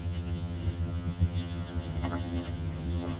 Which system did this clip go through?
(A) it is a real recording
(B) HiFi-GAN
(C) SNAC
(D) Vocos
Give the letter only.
B